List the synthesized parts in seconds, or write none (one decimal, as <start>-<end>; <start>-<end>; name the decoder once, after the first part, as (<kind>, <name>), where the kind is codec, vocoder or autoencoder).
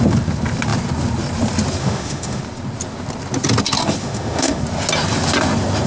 1.8-2.4 (autoencoder, DAC-VAE); 4.0-4.6